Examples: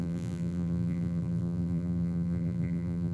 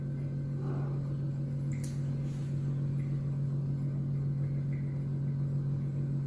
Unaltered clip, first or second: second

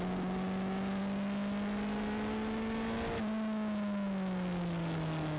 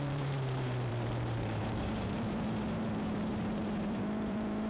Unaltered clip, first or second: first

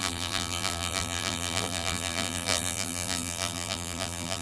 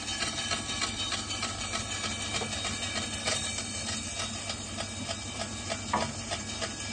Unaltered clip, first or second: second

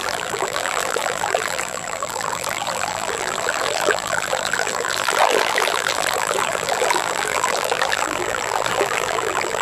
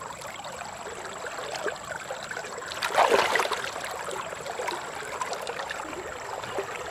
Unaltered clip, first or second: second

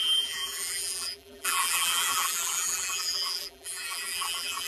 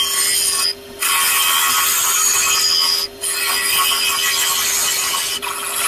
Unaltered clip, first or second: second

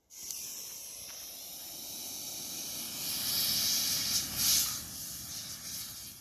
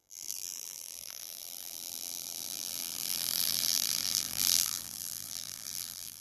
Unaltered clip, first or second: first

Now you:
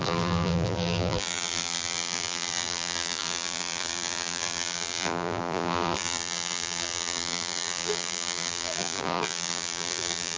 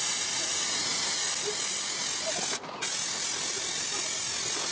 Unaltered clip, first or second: second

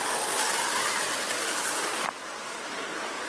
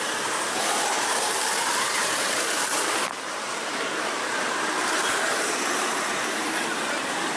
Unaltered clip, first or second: first